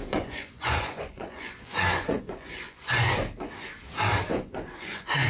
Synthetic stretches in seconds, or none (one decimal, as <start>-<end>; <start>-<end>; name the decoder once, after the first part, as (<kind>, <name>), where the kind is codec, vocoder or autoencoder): 0.0-3.2 (vocoder, Vocos); 4.3-5.3

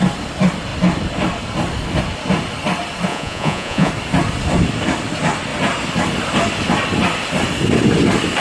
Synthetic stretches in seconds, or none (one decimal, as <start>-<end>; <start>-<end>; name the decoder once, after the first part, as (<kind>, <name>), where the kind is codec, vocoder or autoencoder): 3.1-3.9 (vocoder, Vocos)

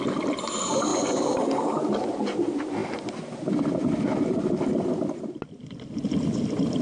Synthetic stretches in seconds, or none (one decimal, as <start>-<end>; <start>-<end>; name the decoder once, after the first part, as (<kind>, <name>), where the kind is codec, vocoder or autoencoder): 0.9-1.9 (vocoder, BigVGAN v2)

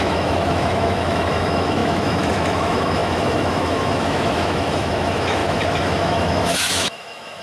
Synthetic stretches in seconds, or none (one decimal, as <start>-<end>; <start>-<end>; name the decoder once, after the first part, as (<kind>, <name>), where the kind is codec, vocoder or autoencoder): 0.0-7.4 (autoencoder, DAC-VAE)